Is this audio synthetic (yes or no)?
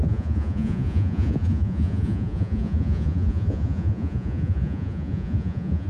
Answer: yes